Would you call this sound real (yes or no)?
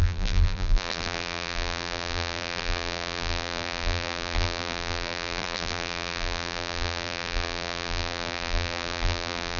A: no